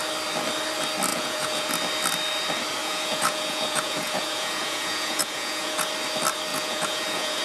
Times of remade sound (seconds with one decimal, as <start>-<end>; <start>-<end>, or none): 1.1-1.7; 2.8-5.9; 6.5-7.4